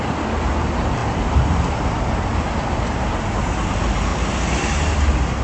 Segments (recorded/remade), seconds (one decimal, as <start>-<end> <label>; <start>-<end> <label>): 0.0-5.4 recorded